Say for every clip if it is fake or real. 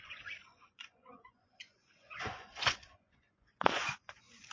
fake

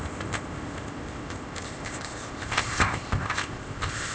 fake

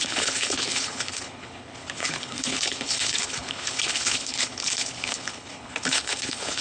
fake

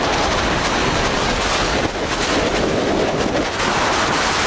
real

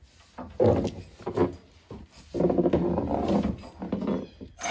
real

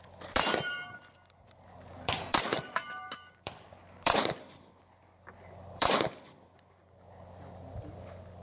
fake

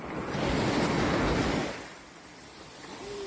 fake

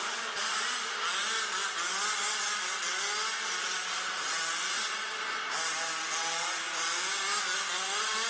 real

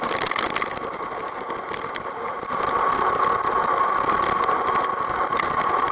real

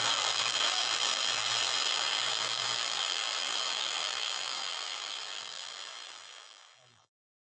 fake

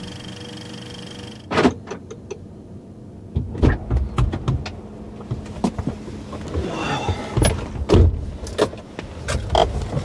real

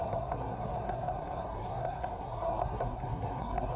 fake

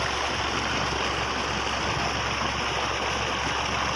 real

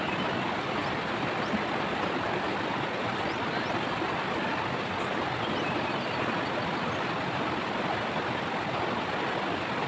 real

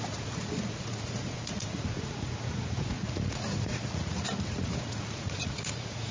fake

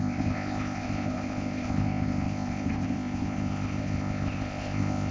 fake